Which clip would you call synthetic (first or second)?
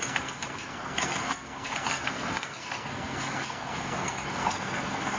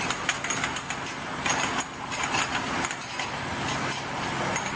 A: first